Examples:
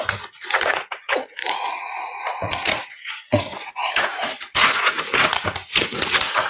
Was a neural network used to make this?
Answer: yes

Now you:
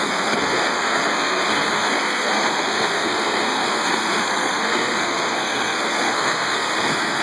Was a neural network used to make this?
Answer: yes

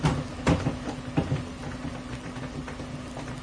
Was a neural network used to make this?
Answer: no